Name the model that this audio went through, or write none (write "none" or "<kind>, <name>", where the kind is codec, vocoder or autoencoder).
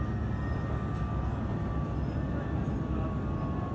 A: none